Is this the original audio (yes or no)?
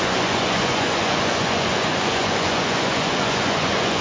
no